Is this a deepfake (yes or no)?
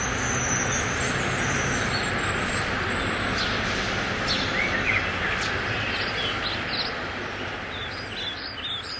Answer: no